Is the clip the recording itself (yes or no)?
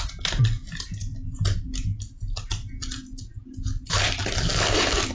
yes